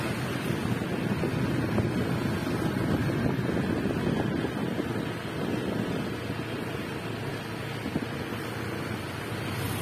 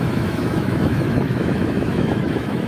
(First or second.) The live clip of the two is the first